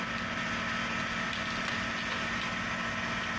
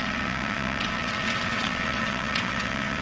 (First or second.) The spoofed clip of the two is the second